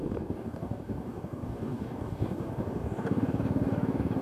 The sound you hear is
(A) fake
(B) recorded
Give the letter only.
A